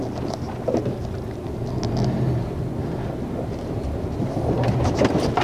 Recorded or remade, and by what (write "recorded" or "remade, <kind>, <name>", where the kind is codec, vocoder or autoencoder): recorded